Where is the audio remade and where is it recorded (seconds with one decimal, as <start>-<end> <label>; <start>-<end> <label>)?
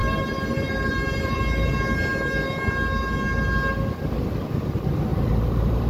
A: 0.0-1.4 remade; 1.4-5.1 recorded; 5.1-5.9 remade